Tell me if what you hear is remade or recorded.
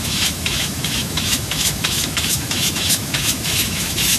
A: remade